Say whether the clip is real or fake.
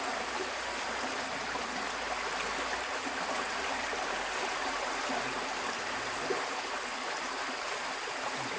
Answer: real